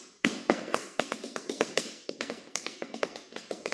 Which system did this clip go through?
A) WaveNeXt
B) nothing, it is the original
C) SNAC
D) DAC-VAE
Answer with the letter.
C